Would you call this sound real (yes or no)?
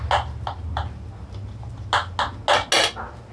yes